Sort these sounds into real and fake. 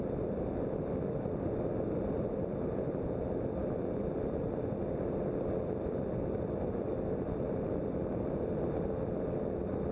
real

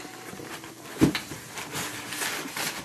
real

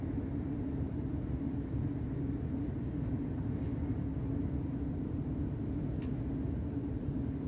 real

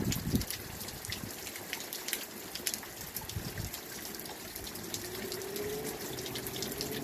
real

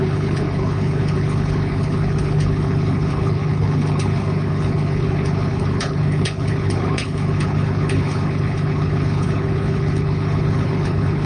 fake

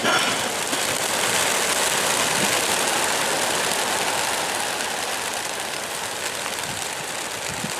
real